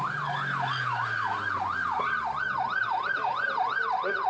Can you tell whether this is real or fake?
real